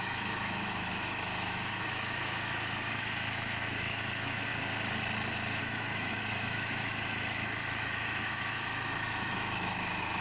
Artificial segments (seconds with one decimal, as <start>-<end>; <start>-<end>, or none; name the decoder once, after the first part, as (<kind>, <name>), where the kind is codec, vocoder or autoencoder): 0.0-4.5 (autoencoder, DAC-VAE); 5.6-10.2